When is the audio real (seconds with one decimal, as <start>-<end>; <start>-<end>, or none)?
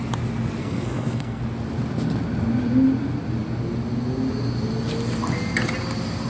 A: 0.0-0.6; 1.4-6.3